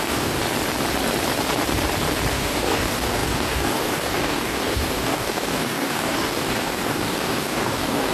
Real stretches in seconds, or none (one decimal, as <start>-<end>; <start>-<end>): 0.4-2.3

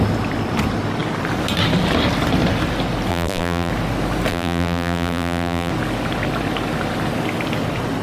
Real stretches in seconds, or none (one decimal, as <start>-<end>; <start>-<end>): 0.0-3.1; 3.7-4.3; 5.7-8.0